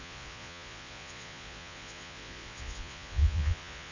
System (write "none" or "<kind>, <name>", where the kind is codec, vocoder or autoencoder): vocoder, Vocos